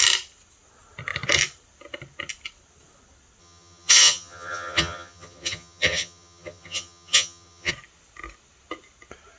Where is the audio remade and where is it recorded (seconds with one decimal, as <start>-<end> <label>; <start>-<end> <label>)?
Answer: 0.0-3.4 recorded; 3.4-7.7 remade; 7.7-9.4 recorded